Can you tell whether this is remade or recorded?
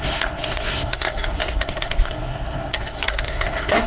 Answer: remade